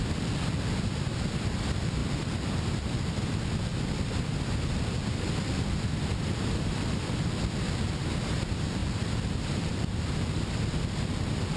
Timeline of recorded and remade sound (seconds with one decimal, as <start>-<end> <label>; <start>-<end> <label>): 0.0-11.6 remade